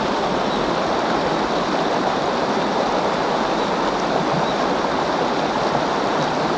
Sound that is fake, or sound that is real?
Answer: real